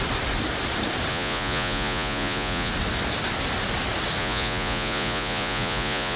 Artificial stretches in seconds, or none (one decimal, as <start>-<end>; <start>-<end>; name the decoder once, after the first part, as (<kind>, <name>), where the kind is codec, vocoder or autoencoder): 1.1-2.7 (vocoder, Vocos); 4.2-6.2